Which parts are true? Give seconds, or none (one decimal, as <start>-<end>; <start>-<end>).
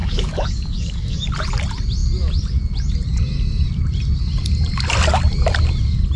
1.3-6.2